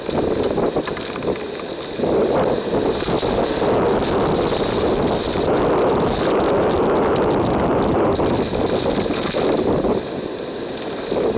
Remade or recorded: recorded